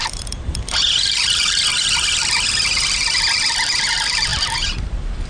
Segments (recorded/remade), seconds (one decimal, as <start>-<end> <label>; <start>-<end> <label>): 0.0-1.7 remade; 1.7-3.9 recorded; 3.9-4.3 remade; 4.3-5.3 recorded